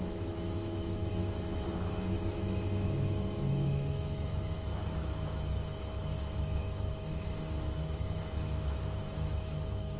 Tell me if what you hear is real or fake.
fake